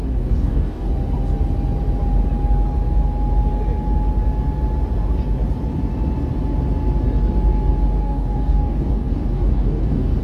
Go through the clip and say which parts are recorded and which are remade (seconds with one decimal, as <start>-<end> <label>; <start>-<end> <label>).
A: 0.0-0.9 remade; 0.9-8.0 recorded; 8.0-10.2 remade